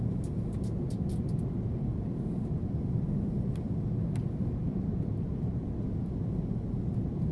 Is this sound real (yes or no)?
yes